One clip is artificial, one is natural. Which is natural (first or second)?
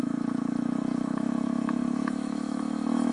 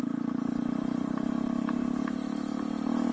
second